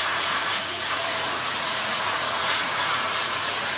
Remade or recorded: remade